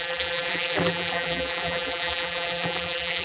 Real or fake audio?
fake